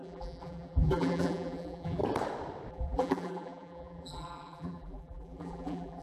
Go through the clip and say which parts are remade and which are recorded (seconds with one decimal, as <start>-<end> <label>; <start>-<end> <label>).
0.0-2.0 remade; 2.0-2.7 recorded; 2.7-6.0 remade